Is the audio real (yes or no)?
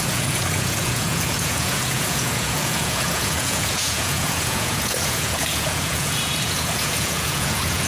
no